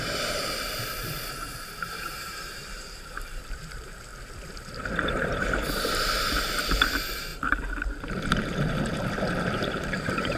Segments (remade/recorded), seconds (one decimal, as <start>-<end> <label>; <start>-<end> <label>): 0.0-4.1 remade; 4.1-5.1 recorded; 5.1-7.3 remade; 7.3-9.4 recorded; 9.4-10.4 remade